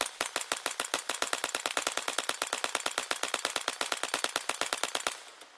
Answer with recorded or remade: recorded